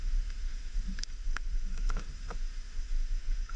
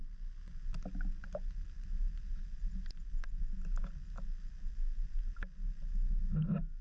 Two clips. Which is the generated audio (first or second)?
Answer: first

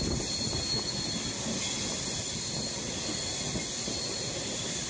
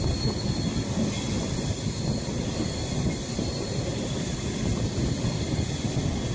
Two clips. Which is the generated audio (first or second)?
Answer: second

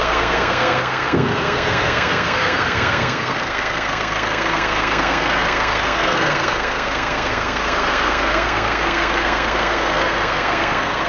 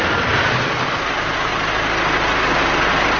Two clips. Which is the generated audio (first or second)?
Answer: first